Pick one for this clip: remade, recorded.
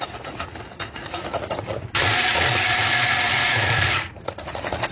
remade